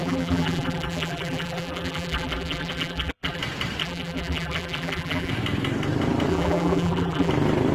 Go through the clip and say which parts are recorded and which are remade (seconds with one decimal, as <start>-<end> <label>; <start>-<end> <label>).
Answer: 0.0-3.4 remade; 3.4-3.8 recorded; 3.8-5.3 remade; 5.3-6.3 recorded; 6.3-7.3 remade; 7.3-7.7 recorded